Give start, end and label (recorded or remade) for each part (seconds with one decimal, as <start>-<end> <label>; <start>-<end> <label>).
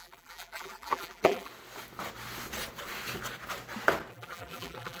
0.0-1.5 remade; 1.5-4.1 recorded; 4.1-5.0 remade